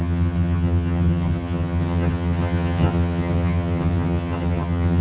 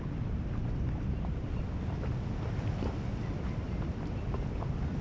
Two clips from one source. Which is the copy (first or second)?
first